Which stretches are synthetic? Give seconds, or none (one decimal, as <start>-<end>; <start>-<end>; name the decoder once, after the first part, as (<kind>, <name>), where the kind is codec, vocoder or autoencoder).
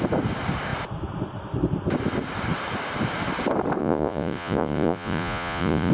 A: 3.8-5.9 (vocoder, Vocos)